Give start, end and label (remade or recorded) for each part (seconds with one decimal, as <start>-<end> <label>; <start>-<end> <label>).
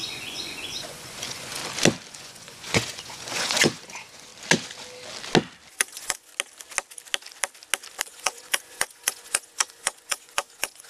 0.0-1.6 remade; 1.6-2.1 recorded; 2.1-4.3 remade; 4.3-5.7 recorded; 5.7-6.3 remade; 6.3-8.0 recorded; 8.0-10.9 remade